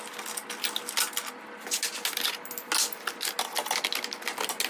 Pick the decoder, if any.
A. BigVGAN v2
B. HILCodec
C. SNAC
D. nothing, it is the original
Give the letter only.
D